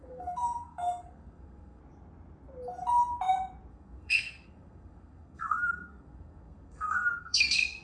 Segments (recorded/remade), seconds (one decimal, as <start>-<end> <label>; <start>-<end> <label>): 0.0-1.8 remade; 1.8-3.7 recorded; 3.7-7.8 remade